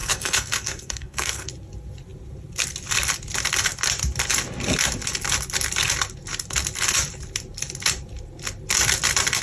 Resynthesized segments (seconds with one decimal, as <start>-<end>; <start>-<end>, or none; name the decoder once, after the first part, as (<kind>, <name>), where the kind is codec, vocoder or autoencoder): 0.0-1.5 (codec, SNAC)